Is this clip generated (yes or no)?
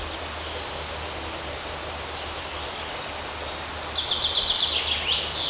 no